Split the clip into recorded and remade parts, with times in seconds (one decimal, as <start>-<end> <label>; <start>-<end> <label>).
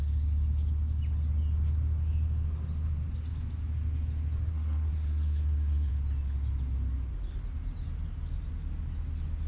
0.0-4.5 recorded; 4.5-5.9 remade; 5.9-9.5 recorded